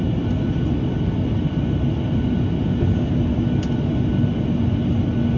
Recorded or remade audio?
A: recorded